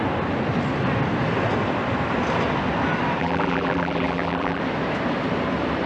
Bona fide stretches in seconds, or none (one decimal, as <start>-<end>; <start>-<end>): 0.0-3.2; 4.6-5.9